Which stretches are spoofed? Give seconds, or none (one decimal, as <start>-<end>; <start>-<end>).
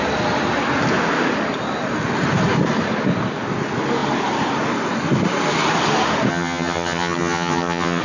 6.3-8.0